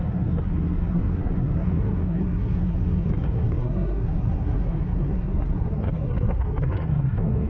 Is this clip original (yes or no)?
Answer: no